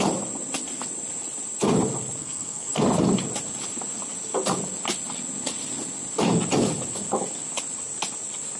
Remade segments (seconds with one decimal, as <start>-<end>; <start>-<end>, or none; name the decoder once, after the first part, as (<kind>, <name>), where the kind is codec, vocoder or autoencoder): 2.2-2.8 (codec, SNAC)

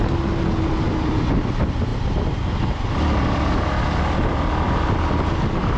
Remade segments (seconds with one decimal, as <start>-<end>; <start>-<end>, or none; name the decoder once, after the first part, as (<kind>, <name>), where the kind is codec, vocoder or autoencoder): none

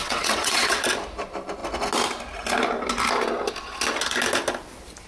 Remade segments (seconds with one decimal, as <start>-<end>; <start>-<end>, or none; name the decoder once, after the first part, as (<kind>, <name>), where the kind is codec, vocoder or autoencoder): 0.0-0.8 (vocoder, WaveNeXt)